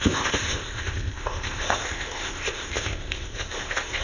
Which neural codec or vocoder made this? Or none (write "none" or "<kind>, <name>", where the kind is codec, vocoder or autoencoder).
codec, ZipCodec